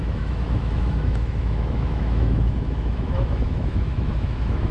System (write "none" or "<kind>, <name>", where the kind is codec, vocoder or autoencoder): autoencoder, DAC-VAE